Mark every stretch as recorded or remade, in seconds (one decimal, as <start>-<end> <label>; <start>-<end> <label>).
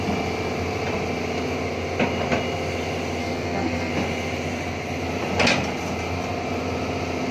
0.0-3.2 recorded; 3.2-3.9 remade; 3.9-7.3 recorded